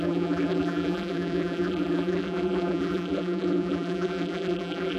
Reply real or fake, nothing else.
fake